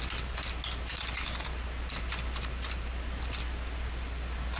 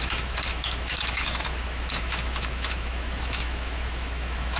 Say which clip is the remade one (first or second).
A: second